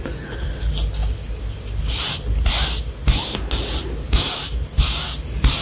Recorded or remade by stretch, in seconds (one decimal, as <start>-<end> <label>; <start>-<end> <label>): 0.0-5.6 recorded